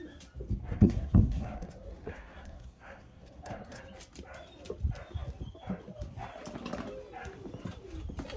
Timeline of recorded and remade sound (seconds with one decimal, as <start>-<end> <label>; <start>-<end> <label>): 0.0-0.6 recorded; 0.6-3.8 remade; 3.8-8.4 recorded